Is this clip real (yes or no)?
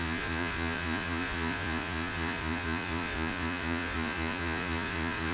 no